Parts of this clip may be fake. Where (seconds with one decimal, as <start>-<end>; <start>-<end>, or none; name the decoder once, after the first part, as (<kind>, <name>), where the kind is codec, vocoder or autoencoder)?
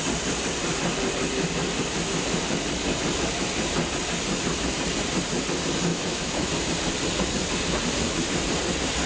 5.9-6.5 (autoencoder, DAC-VAE)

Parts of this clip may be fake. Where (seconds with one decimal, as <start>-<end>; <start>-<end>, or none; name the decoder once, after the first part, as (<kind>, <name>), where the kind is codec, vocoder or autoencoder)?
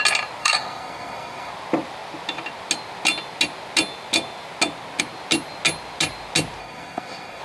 0.4-1.5 (codec, SNAC); 6.6-7.4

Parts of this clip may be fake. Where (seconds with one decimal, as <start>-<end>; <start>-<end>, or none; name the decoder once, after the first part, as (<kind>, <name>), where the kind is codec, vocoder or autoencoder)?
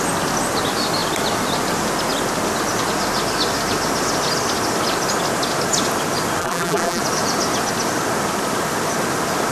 6.4-7.0 (vocoder, BigVGAN v2)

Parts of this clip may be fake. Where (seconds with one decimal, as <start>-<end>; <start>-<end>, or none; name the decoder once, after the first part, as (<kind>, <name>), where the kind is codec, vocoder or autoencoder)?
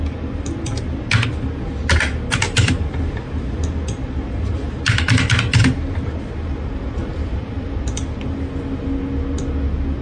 7.0-8.4 (vocoder, BigVGAN v2)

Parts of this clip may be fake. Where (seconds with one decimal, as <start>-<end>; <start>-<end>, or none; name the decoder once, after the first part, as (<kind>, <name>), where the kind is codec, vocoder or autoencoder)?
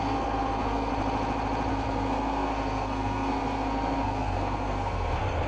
0.0-0.9 (codec, SNAC); 1.7-5.5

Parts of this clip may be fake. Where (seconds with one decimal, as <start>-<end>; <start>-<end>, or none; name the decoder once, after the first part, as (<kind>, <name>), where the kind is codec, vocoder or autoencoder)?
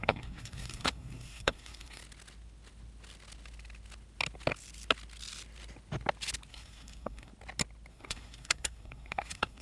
0.0-2.0 (codec, SNAC); 6.5-7.3; 7.9-9.6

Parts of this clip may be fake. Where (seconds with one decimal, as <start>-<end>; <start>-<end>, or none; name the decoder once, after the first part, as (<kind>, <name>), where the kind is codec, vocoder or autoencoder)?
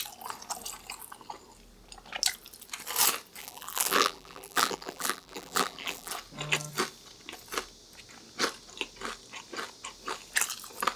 3.4-6.1 (vocoder, BigVGAN v2)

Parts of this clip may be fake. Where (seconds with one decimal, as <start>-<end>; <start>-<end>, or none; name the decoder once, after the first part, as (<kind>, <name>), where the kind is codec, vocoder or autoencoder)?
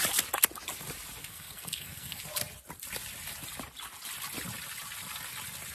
1.2-2.2 (codec, SNAC)